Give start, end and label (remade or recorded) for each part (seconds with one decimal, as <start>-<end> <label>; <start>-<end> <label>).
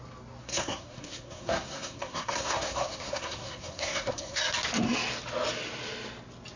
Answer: 0.0-0.4 recorded; 0.4-4.4 remade; 4.4-6.6 recorded